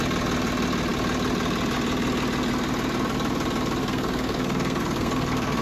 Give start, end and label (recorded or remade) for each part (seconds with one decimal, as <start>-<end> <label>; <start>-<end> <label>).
0.0-3.8 recorded; 3.8-5.6 remade